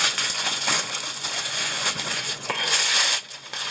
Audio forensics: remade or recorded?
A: remade